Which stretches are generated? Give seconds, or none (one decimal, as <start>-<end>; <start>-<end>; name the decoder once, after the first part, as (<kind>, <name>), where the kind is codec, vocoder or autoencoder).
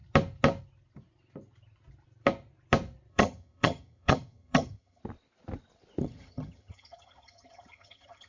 3.1-5.0 (vocoder, HiFi-GAN); 6.0-8.3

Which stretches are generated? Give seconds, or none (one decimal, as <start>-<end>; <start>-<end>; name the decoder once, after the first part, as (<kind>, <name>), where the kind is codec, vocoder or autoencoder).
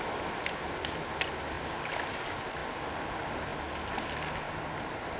none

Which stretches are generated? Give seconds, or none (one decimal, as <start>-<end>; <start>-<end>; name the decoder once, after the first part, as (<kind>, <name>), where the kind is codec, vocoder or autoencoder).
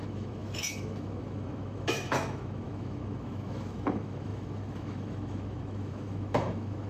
0.0-6.9 (autoencoder, DAC-VAE)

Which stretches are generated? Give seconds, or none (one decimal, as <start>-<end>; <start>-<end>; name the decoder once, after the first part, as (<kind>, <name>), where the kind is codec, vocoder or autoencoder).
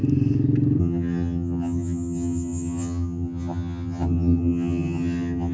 0.8-5.5 (vocoder, HiFi-GAN)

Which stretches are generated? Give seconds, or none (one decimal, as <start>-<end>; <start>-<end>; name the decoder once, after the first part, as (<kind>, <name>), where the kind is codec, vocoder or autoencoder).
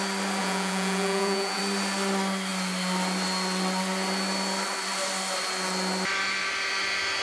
0.4-1.6 (vocoder, Vocos)